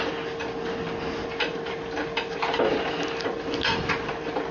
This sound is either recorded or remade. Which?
recorded